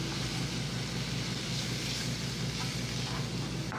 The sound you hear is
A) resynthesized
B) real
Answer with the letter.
B